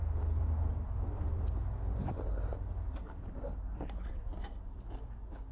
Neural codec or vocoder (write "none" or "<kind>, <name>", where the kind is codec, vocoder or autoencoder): none